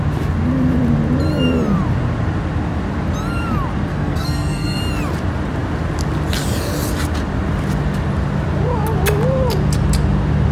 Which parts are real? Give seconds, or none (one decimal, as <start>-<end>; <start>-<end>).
0.0-3.9; 4.8-10.5